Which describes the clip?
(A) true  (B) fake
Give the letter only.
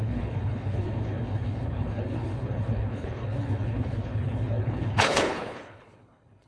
B